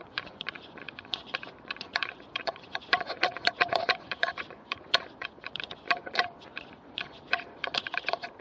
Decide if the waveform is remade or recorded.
remade